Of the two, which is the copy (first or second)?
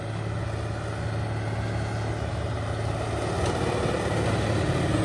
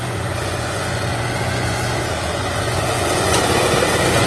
second